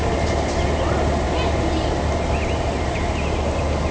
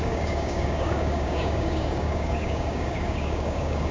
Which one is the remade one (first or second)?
second